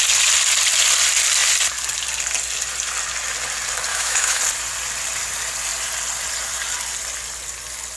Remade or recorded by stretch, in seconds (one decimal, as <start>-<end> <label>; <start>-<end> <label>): 0.0-3.9 recorded; 3.9-4.4 remade; 4.4-8.0 recorded